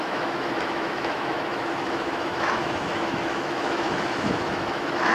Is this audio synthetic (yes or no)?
yes